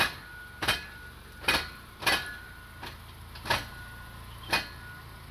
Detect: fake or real real